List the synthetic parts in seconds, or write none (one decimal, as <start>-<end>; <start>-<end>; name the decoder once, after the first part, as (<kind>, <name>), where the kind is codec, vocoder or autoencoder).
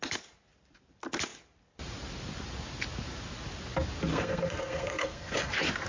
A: 4.1-5.5 (codec, SNAC)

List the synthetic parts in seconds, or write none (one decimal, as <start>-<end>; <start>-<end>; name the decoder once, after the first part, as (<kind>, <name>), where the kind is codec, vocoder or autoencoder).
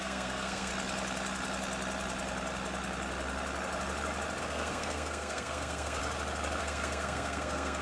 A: 0.0-0.7 (codec, SNAC); 4.4-6.0; 6.6-7.8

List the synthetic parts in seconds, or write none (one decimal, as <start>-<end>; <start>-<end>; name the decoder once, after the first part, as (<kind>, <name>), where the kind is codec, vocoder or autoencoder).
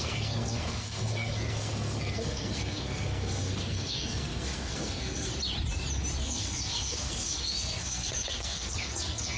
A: 0.0-5.3 (codec, SNAC); 6.2-9.4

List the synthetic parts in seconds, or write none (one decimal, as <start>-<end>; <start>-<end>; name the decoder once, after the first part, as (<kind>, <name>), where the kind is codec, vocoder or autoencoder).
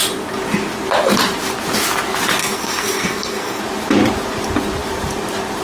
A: 2.4-3.6 (codec, SNAC)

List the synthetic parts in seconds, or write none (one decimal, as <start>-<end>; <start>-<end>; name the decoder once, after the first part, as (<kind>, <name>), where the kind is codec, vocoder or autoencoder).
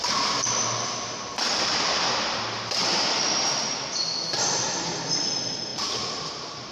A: none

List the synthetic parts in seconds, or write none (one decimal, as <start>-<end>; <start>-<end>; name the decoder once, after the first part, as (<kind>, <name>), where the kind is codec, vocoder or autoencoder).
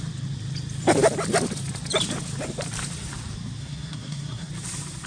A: 3.6-4.5 (codec, SNAC)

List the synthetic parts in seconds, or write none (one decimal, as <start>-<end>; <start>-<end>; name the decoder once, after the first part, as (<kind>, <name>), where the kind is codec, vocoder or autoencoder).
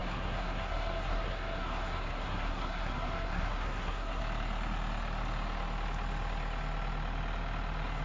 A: 0.0-4.2 (codec, SNAC)